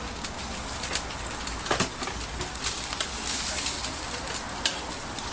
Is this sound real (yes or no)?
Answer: yes